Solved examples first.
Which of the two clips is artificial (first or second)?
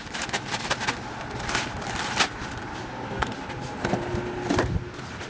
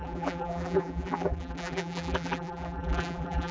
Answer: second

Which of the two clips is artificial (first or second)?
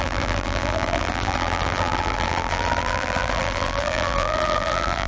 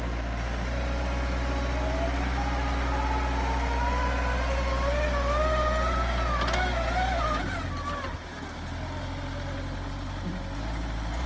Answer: first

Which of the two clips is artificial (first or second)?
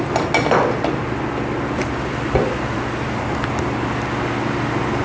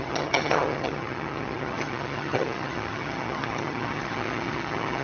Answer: second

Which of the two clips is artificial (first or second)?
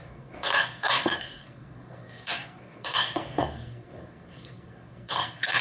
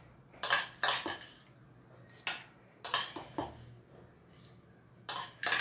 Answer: first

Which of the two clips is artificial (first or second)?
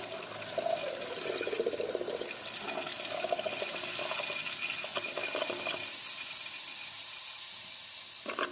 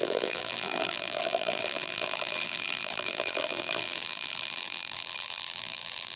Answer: second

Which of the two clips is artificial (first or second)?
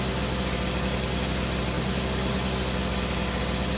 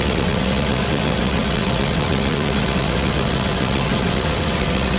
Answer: second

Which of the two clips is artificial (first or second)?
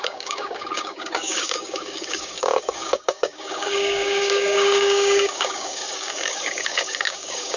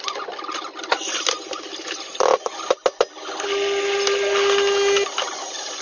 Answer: first